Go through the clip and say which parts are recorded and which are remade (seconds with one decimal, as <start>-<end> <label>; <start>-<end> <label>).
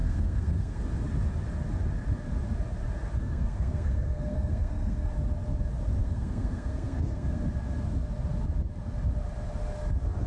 0.0-0.8 remade; 0.8-3.2 recorded; 3.2-5.1 remade; 5.1-6.0 recorded; 6.0-7.4 remade; 7.4-10.3 recorded